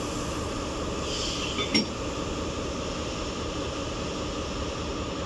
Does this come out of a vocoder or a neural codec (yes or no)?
no